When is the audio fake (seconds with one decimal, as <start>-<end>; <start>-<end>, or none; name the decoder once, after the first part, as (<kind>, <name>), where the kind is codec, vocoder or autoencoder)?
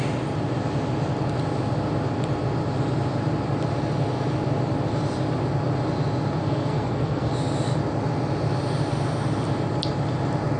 6.4-7.3 (codec, SNAC)